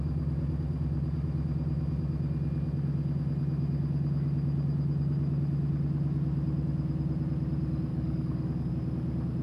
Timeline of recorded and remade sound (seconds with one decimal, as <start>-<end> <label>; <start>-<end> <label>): 0.0-7.9 recorded; 7.9-8.7 remade; 8.7-9.4 recorded